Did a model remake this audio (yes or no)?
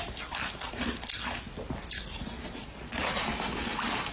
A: no